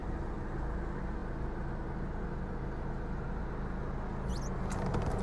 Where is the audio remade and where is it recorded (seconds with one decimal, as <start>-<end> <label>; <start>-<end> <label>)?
0.0-0.6 remade; 0.6-5.2 recorded